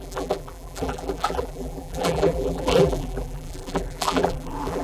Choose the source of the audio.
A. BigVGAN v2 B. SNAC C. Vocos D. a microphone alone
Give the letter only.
A